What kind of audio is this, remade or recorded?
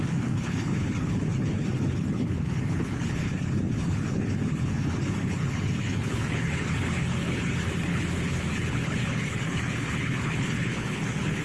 remade